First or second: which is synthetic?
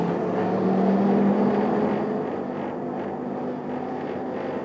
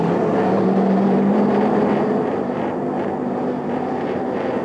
second